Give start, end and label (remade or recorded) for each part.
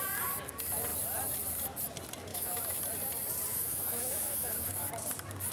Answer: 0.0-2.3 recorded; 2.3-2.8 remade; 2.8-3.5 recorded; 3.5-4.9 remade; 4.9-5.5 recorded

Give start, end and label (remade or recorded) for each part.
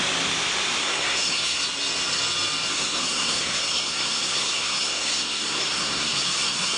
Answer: 0.0-0.8 recorded; 0.8-1.6 remade; 1.6-2.7 recorded; 2.7-6.8 remade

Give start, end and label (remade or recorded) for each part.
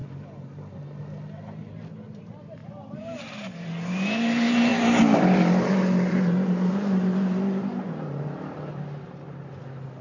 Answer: 0.0-2.6 recorded; 2.6-3.5 remade; 3.5-4.7 recorded; 4.7-8.7 remade; 8.7-10.0 recorded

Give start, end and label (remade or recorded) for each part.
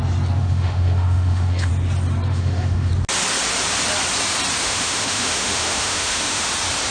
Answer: 0.0-0.4 recorded; 0.4-1.7 remade; 1.7-2.3 recorded; 2.3-2.9 remade; 2.9-4.6 recorded; 4.6-6.5 remade; 6.5-6.9 recorded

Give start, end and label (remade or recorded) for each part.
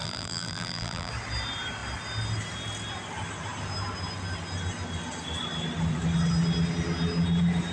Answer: 0.0-1.1 remade; 1.1-7.7 recorded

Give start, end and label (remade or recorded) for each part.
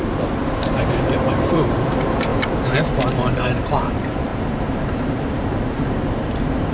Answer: 0.0-6.7 remade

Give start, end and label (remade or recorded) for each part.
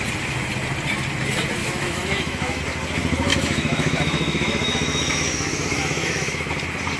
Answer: 0.0-1.6 recorded; 1.6-2.6 remade; 2.6-3.3 recorded; 3.3-6.5 remade; 6.5-7.0 recorded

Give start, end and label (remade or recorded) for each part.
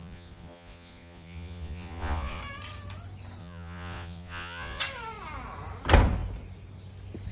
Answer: 0.0-2.4 remade; 2.4-3.4 recorded; 3.4-4.8 remade; 4.8-7.3 recorded